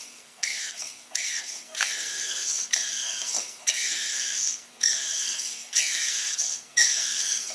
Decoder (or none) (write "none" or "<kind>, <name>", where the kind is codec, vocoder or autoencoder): codec, SNAC